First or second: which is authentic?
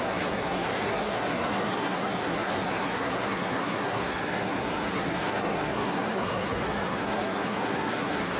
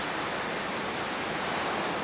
second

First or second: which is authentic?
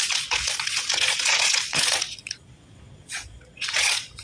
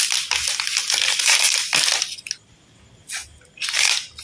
second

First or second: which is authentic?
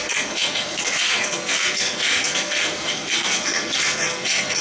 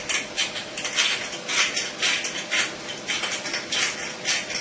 second